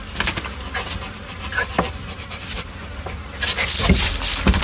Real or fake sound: real